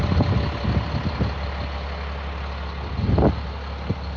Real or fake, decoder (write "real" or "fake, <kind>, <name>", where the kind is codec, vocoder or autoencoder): real